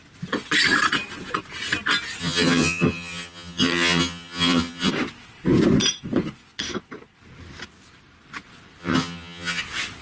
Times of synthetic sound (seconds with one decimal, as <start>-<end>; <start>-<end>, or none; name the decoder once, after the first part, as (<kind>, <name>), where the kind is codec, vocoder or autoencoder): 2.2-4.9 (vocoder, HiFi-GAN); 8.8-9.6

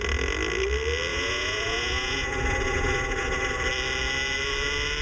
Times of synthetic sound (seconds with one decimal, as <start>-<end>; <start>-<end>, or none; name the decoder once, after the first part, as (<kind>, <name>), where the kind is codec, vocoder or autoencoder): 1.1-3.5 (vocoder, Vocos)

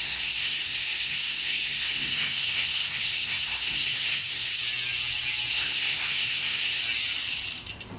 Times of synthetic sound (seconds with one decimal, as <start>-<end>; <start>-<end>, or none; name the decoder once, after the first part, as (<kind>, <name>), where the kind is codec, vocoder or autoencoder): 0.0-4.6 (codec, SNAC); 5.5-6.8

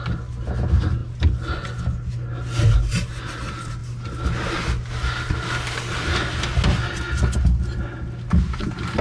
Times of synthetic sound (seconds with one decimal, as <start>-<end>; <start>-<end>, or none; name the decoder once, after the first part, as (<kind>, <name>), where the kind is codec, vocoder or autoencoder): none